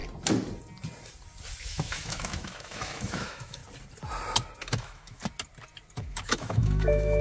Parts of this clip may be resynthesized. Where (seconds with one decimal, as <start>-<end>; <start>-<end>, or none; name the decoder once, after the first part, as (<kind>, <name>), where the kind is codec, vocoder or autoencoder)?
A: 1.6-3.6 (autoencoder, DAC-VAE); 4.6-5.2; 6.0-7.2